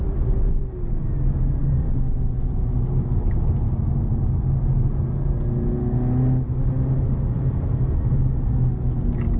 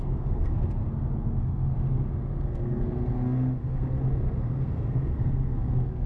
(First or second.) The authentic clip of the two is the first